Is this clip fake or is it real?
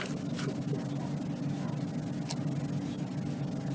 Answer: real